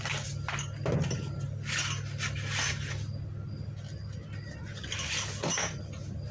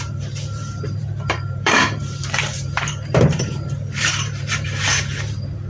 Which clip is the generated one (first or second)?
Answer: second